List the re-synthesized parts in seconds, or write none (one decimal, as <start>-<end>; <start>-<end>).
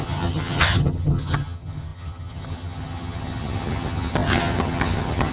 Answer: 0.0-5.3